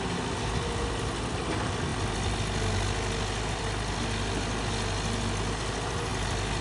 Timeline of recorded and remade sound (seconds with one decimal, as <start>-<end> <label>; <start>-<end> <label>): 0.0-6.6 recorded